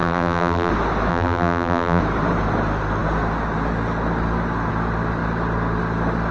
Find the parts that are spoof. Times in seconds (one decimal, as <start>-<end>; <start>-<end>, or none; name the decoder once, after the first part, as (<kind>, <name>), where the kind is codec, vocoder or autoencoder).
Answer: 0.0-0.7 (vocoder, BigVGAN v2); 1.1-2.0